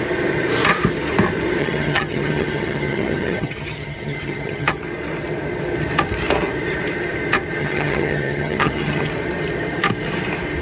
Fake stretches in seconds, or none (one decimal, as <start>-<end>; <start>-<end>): 1.6-4.8; 7.6-9.1